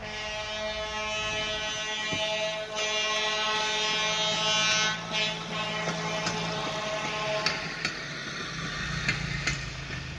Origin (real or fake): real